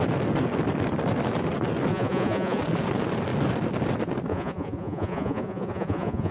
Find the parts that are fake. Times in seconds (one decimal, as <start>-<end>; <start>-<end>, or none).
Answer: 1.9-2.6; 4.3-6.3